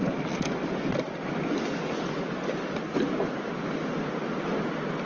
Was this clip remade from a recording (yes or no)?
no